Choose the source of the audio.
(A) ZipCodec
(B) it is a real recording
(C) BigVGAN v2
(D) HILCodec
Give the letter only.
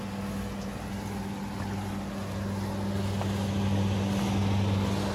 B